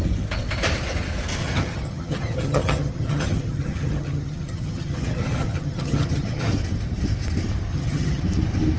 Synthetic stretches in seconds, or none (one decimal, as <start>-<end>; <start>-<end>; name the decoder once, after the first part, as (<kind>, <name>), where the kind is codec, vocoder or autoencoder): 1.4-6.5 (vocoder, HiFi-GAN); 7.7-8.2